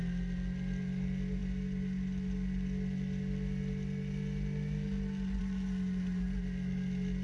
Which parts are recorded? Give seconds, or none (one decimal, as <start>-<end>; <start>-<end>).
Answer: 0.0-7.2